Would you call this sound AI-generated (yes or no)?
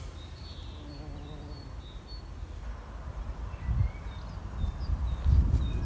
no